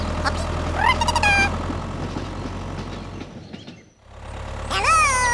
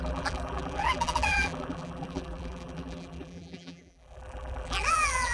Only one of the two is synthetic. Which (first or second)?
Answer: second